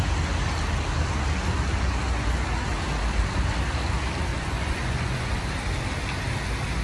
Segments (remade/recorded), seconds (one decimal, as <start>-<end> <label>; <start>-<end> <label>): 0.0-4.3 recorded; 4.3-5.4 remade; 5.4-6.8 recorded